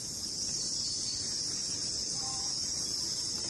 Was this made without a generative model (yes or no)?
no